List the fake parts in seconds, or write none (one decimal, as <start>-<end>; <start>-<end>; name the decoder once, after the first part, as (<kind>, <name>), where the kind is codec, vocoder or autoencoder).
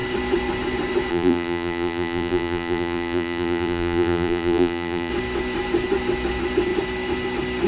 1.1-5.1 (vocoder, BigVGAN v2)